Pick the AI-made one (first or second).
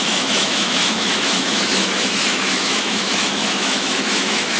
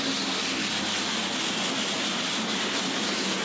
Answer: first